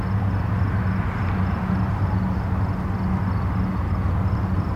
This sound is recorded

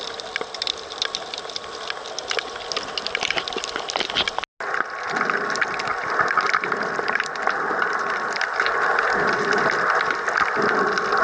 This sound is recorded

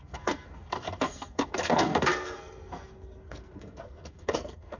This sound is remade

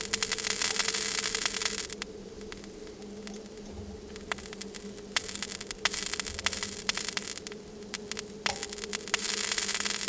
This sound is recorded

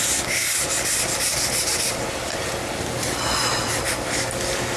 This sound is recorded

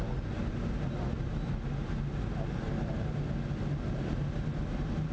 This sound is recorded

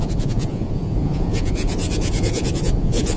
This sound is remade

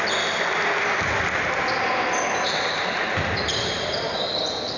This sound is recorded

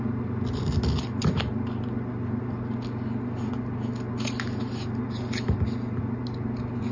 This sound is recorded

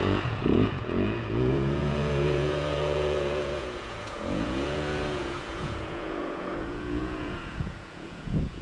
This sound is remade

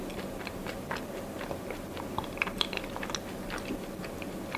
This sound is recorded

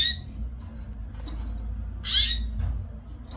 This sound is recorded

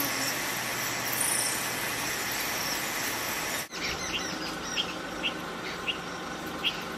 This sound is recorded